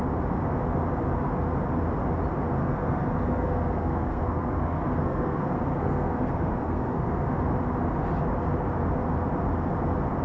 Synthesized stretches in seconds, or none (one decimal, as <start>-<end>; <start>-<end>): 2.6-7.3